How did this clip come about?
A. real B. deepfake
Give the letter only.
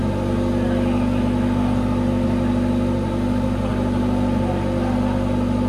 A